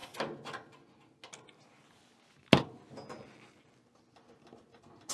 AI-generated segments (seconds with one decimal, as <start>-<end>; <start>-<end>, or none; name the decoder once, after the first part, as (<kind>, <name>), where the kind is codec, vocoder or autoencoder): none